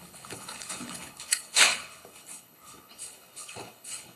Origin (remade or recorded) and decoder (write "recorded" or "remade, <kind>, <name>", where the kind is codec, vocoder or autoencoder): remade, codec, HILCodec